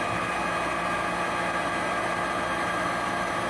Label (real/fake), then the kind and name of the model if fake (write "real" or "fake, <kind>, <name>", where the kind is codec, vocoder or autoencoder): real